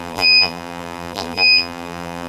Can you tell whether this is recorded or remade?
remade